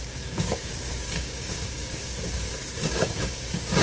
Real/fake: fake